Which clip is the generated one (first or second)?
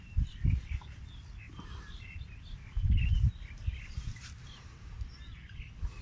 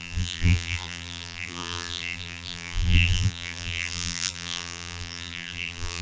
second